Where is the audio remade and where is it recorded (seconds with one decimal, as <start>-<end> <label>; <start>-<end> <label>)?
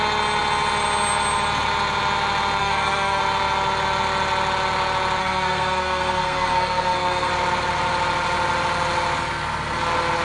0.0-2.6 recorded; 2.6-3.2 remade; 3.2-5.2 recorded; 5.2-7.3 remade; 7.3-10.2 recorded